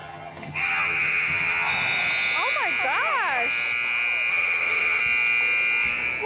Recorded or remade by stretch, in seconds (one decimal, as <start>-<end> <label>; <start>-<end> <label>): 0.0-1.7 remade; 1.7-4.3 recorded; 4.3-5.0 remade; 5.0-6.3 recorded